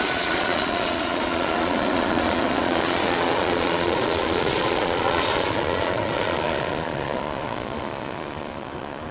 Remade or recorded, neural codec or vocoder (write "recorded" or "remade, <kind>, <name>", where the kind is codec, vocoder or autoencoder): remade, vocoder, Vocos